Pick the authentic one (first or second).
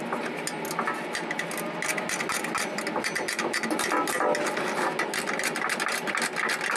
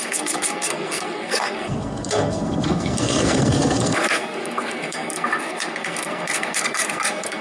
first